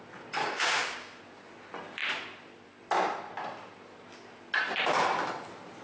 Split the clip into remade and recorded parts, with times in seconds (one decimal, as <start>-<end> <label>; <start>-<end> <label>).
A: 0.0-0.4 recorded; 0.4-1.2 remade; 1.2-5.8 recorded